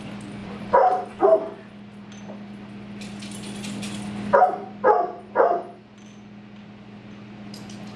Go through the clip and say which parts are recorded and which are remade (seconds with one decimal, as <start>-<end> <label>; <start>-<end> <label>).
0.0-0.4 recorded; 0.4-1.1 remade; 1.1-8.0 recorded